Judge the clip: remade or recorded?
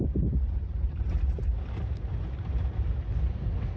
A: recorded